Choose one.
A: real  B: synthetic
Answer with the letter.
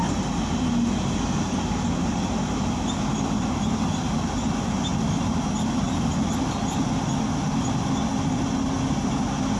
A